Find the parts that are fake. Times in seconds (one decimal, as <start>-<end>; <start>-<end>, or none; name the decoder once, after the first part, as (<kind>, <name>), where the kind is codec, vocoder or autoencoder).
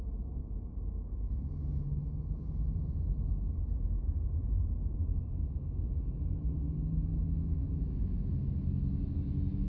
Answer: 0.4-1.5 (autoencoder, DAC-VAE); 5.0-5.9; 7.1-8.5